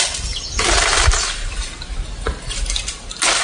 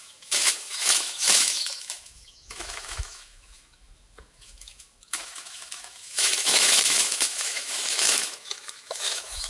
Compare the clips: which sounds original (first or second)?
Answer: first